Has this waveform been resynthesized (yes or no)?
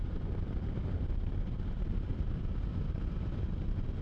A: no